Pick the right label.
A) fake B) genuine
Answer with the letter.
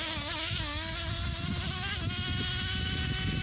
B